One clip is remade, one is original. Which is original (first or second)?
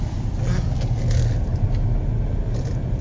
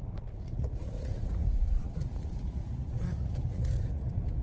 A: first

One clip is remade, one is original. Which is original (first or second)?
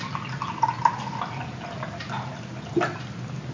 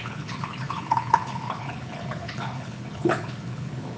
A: first